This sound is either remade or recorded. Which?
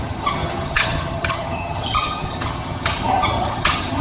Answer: remade